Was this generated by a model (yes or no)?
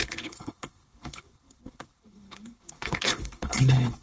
yes